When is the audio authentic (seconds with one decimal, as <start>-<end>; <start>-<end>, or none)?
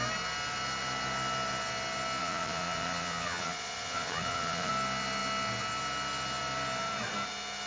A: 0.0-2.2; 4.7-7.7